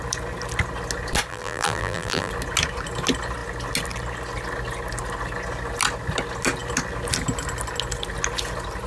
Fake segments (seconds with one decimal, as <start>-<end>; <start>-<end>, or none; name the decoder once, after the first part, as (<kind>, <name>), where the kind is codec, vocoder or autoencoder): 1.3-2.3 (vocoder, BigVGAN v2)